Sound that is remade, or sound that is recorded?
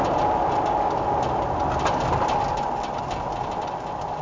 recorded